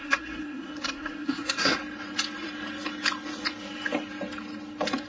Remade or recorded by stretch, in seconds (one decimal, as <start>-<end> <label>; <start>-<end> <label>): 0.0-1.8 remade; 1.8-5.1 recorded